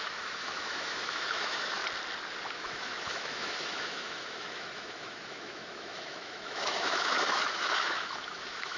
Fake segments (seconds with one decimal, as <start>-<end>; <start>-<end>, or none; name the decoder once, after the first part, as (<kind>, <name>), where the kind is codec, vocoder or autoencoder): 0.0-1.8 (autoencoder, DAC-VAE); 2.5-8.8